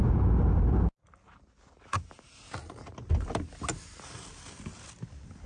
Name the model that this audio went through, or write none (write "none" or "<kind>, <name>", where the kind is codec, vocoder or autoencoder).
none